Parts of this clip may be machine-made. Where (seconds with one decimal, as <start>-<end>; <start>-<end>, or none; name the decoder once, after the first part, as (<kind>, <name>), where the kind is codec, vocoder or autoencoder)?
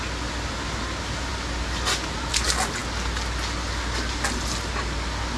none